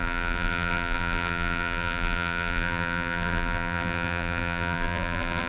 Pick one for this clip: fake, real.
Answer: fake